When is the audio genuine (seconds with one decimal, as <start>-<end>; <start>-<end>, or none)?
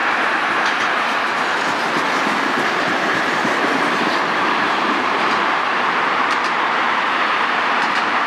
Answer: 0.0-2.9